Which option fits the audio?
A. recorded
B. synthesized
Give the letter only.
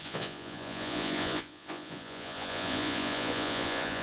B